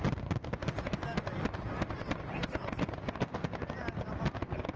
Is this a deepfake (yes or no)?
no